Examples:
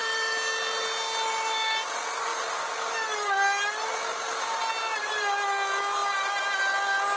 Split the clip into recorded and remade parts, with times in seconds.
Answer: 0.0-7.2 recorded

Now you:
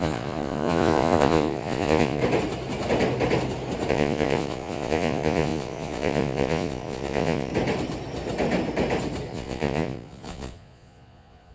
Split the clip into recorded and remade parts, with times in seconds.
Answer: 0.0-2.2 remade; 2.2-3.9 recorded; 3.9-7.5 remade; 7.5-9.3 recorded; 9.3-11.5 remade

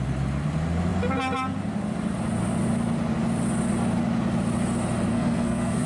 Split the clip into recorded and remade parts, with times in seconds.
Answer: 0.0-5.1 recorded; 5.1-5.9 remade

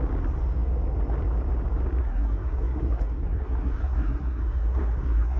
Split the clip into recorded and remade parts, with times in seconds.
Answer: 0.0-2.0 recorded; 2.0-5.4 remade

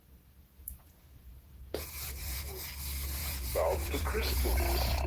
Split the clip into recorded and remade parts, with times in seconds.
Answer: 0.0-0.6 recorded; 0.6-2.7 remade; 2.7-3.2 recorded; 3.2-5.1 remade

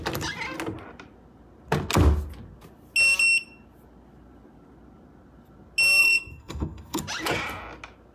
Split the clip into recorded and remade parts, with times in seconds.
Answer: 0.0-6.0 recorded; 6.0-7.0 remade; 7.0-8.1 recorded